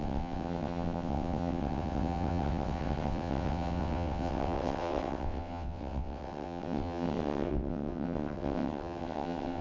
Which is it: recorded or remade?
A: remade